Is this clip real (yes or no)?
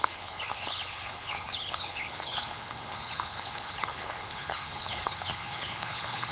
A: no